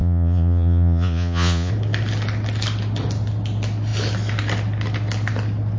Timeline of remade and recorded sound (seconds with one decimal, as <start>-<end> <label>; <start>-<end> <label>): 0.0-1.7 remade; 1.7-5.8 recorded